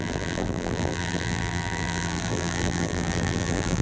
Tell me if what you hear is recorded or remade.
remade